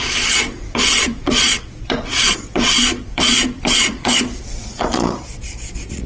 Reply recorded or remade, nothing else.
remade